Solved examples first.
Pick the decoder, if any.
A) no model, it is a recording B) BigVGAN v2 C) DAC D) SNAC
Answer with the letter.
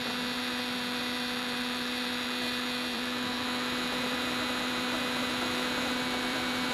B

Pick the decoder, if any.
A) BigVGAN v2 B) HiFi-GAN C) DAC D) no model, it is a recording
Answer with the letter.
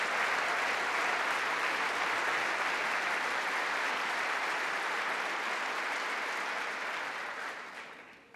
D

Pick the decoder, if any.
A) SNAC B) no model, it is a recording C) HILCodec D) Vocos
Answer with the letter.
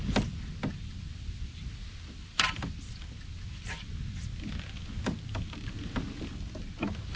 B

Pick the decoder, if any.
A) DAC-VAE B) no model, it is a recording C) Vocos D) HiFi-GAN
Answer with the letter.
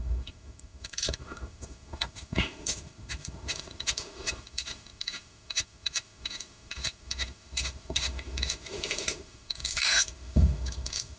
A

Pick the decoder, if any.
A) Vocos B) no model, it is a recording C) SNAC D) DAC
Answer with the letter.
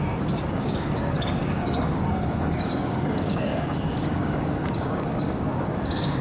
D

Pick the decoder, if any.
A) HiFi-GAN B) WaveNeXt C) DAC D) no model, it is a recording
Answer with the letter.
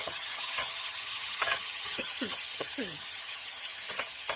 A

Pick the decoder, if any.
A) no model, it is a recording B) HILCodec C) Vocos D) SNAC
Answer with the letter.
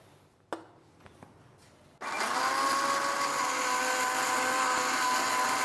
A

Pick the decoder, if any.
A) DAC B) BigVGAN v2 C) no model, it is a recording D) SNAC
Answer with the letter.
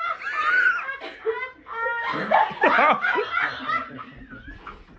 C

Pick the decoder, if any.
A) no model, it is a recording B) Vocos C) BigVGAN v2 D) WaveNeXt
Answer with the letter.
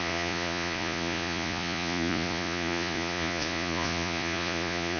B